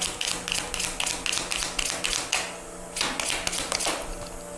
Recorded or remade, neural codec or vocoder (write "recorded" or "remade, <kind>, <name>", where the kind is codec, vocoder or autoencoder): recorded